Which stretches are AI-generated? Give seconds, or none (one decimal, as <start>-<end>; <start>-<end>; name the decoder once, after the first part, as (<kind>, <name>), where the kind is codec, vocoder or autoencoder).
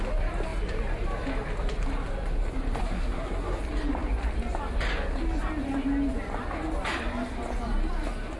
2.8-3.6 (codec, SNAC)